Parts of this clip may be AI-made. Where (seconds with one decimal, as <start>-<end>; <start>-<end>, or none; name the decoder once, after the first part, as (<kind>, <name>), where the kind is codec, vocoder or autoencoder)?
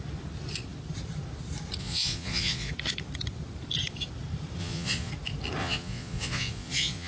1.8-2.7 (vocoder, Vocos); 4.6-5.1; 5.6-7.1